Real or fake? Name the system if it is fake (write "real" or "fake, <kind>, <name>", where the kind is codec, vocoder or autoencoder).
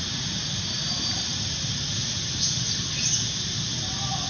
real